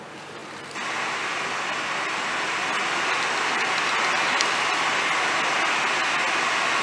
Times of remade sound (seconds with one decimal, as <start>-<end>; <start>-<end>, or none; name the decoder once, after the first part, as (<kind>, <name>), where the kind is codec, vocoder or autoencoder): none